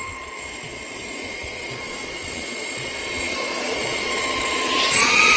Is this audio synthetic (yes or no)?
yes